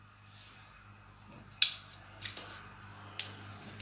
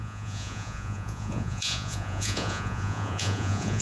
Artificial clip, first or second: second